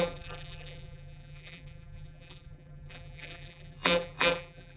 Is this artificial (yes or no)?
yes